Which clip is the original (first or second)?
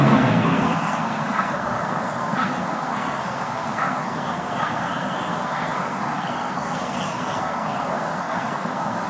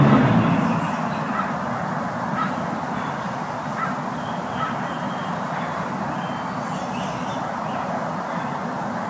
second